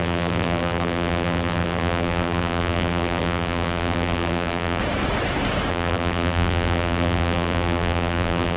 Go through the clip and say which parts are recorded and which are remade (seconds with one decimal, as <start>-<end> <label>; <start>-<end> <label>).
0.0-4.8 remade; 4.8-5.7 recorded; 5.7-8.6 remade